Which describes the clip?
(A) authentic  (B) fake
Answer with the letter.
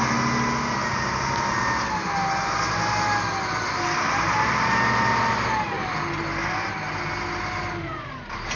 A